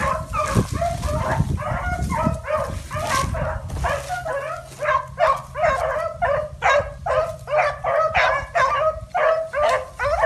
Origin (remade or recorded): recorded